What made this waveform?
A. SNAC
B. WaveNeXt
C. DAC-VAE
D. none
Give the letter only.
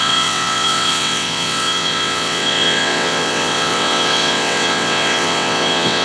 B